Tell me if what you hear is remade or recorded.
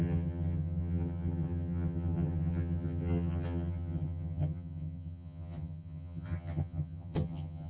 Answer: remade